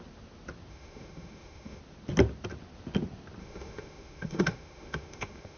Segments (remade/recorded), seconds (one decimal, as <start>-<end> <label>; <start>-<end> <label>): 0.0-0.7 recorded; 0.7-1.8 remade; 1.8-3.4 recorded; 3.4-5.6 remade